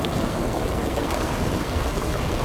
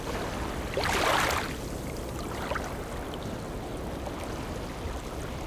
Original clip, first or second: second